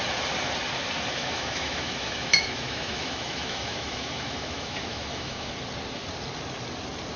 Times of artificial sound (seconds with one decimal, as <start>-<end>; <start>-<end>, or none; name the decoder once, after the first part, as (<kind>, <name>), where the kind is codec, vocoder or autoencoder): 1.2-5.5 (autoencoder, DAC-VAE)